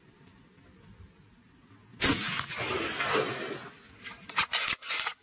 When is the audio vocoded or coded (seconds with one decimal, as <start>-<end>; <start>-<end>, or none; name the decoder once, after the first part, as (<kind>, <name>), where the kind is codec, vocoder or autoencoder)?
0.0-2.2 (vocoder, BigVGAN v2); 4.0-5.2